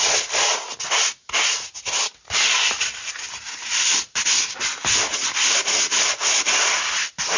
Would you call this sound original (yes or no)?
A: yes